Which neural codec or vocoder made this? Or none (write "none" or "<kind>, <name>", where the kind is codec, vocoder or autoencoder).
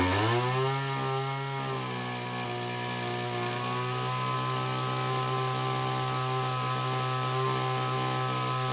none